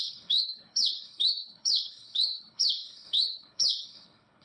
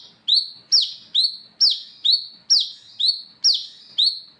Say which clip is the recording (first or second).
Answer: second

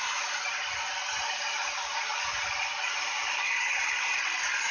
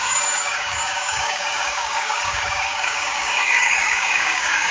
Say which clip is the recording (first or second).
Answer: first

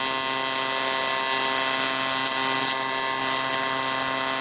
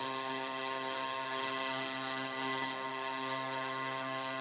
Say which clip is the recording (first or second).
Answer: first